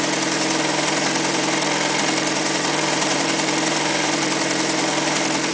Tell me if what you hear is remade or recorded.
remade